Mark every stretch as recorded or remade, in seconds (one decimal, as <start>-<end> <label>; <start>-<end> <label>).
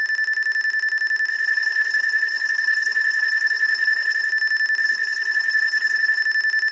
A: 0.0-1.3 recorded; 1.3-4.3 remade; 4.3-4.8 recorded; 4.8-6.2 remade; 6.2-6.7 recorded